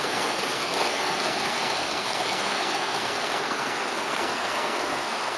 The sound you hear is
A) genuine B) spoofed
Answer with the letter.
B